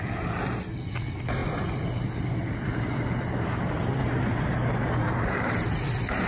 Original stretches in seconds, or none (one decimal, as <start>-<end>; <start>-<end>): 0.0-4.0; 5.8-6.3